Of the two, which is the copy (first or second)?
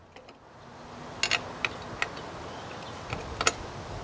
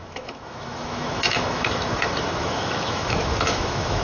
second